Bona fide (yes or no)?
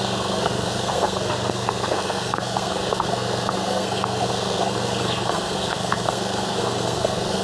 no